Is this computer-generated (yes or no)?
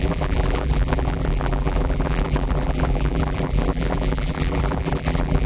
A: yes